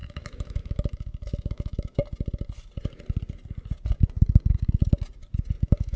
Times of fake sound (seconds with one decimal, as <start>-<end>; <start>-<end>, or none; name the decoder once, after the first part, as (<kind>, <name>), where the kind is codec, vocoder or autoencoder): 0.0-2.0 (autoencoder, DAC-VAE); 5.6-6.0